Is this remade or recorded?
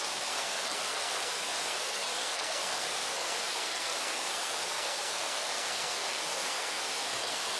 remade